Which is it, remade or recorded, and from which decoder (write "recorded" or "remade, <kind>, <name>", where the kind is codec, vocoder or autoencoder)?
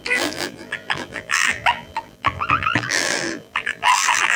remade, vocoder, BigVGAN v2